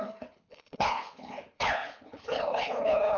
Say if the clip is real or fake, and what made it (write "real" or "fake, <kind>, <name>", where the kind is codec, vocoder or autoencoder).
fake, codec, HILCodec